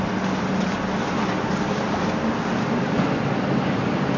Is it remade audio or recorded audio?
recorded